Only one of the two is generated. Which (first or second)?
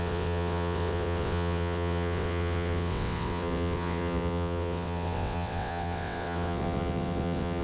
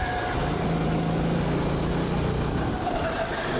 first